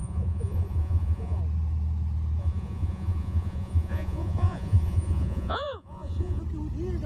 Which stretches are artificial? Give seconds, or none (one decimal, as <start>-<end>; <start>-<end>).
0.0-1.4; 2.4-6.4